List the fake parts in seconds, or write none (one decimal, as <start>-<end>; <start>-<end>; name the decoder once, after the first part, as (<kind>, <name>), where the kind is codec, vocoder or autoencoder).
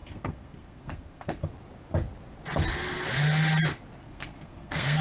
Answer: 0.0-1.4 (codec, SNAC); 4.0-5.0